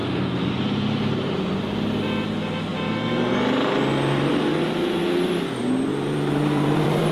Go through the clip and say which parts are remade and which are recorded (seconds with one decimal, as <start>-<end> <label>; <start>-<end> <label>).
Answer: 0.0-1.6 remade; 1.6-5.9 recorded; 5.9-7.1 remade